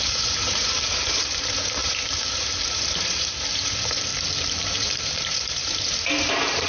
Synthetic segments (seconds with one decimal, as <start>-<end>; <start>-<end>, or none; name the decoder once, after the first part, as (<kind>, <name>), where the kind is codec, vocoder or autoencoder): 0.0-4.1 (vocoder, BigVGAN v2); 4.7-6.7